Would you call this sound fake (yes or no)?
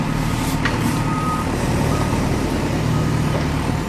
yes